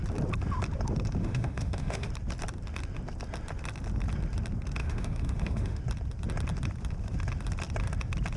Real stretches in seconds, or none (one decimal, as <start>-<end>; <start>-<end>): 0.0-1.2; 2.1-4.8; 5.8-8.4